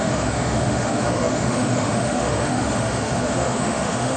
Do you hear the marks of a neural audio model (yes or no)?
yes